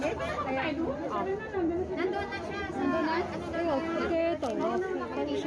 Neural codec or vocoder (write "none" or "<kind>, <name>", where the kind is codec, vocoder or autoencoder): none